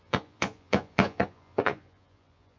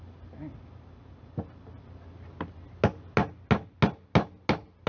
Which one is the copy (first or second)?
first